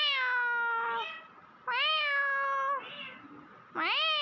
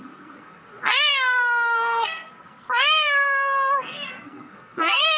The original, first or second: first